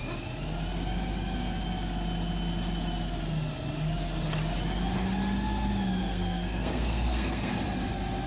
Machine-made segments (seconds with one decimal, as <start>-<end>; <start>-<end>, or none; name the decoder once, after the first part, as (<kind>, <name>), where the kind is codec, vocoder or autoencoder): 6.0-7.5 (codec, SNAC)